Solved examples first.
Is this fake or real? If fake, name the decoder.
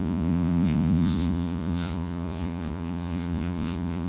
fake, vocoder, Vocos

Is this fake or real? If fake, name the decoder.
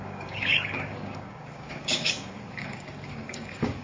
fake, codec, DAC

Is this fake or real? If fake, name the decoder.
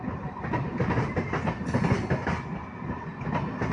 real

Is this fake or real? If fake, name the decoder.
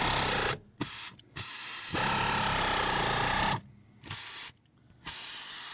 real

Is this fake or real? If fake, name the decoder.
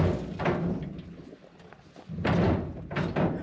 real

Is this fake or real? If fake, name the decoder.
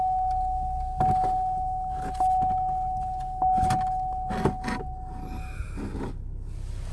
real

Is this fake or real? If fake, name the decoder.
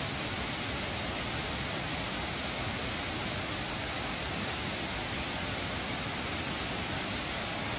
fake, vocoder, BigVGAN v2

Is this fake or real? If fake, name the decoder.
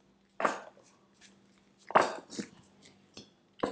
real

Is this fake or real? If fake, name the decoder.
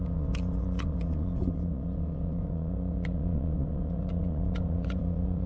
fake, vocoder, Vocos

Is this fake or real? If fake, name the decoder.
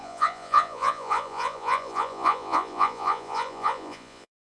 fake, vocoder, Vocos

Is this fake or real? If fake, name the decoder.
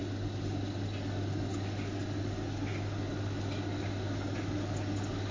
real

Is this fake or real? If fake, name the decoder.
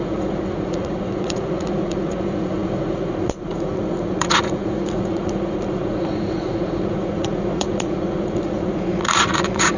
fake, vocoder, Vocos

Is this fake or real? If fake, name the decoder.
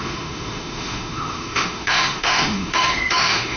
fake, autoencoder, DAC-VAE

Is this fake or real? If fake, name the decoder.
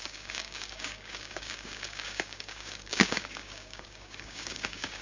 fake, codec, DAC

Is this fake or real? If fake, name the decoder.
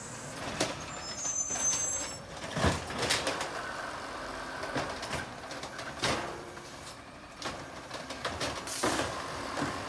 fake, vocoder, BigVGAN v2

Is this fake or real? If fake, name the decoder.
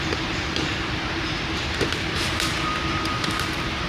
fake, vocoder, BigVGAN v2